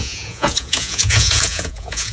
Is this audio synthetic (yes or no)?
yes